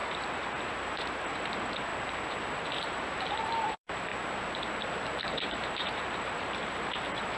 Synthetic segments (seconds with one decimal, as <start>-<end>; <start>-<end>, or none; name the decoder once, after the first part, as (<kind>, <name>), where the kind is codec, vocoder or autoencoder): 0.0-1.9 (vocoder, BigVGAN v2); 2.6-4.1; 5.3-7.4